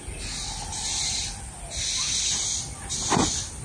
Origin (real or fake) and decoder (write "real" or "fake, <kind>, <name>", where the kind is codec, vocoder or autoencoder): real